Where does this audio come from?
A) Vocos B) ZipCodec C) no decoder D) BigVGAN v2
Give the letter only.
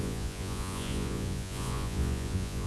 A